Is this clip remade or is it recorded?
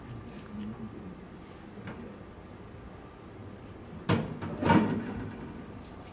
recorded